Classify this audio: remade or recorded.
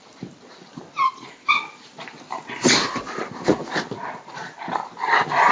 recorded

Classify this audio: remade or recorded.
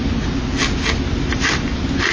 recorded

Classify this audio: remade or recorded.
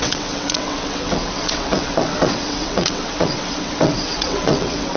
remade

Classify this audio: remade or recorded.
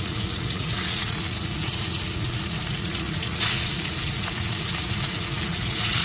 remade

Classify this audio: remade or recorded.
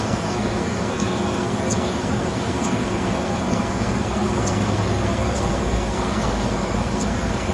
remade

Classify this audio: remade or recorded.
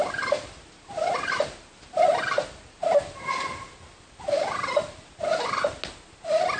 recorded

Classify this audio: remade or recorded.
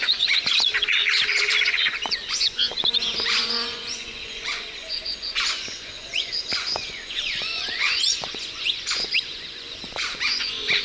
remade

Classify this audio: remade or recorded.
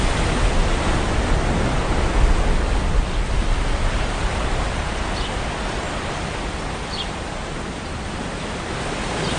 recorded